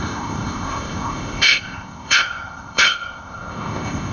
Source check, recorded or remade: remade